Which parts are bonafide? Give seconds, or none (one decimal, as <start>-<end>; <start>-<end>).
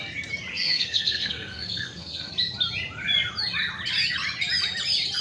0.0-0.5; 2.3-5.2